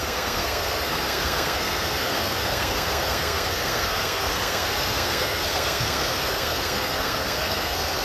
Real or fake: fake